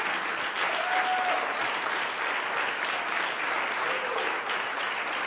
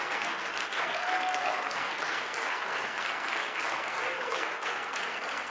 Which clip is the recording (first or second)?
first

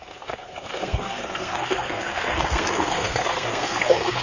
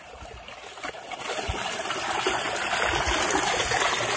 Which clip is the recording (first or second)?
second